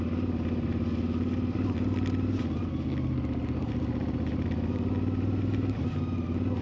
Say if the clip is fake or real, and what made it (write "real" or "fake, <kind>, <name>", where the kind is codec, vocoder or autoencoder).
real